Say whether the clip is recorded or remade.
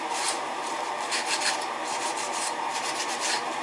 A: remade